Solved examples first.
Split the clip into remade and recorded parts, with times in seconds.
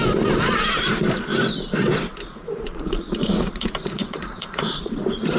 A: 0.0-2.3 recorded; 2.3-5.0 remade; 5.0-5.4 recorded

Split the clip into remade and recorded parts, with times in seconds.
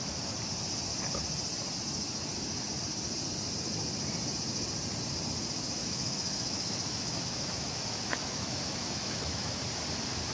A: 0.0-5.8 recorded; 5.8-9.6 remade; 9.6-10.3 recorded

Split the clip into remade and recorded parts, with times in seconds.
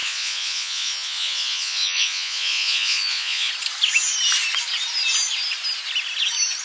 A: 0.0-3.5 remade; 3.5-6.6 recorded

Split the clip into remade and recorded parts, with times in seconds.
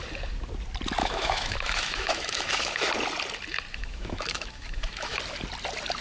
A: 0.0-1.0 recorded; 1.0-2.9 remade; 2.9-3.7 recorded; 3.7-5.2 remade; 5.2-6.0 recorded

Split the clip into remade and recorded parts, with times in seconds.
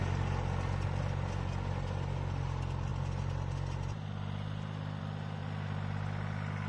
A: 0.0-6.7 recorded